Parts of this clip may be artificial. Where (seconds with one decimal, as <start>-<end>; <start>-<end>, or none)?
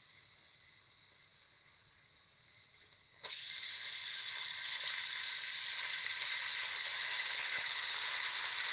7.3-8.0